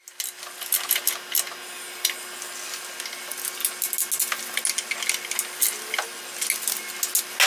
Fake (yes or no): no